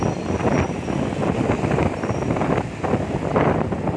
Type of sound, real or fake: real